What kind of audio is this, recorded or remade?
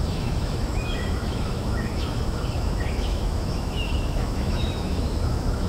remade